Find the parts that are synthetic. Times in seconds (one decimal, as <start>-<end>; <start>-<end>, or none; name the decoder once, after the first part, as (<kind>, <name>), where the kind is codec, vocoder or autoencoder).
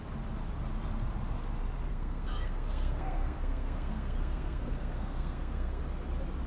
1.9-5.8 (codec, SNAC)